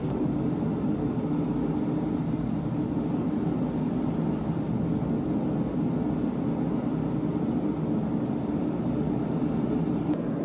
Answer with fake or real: real